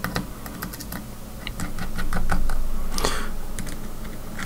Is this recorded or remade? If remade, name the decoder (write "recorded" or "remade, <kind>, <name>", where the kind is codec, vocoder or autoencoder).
recorded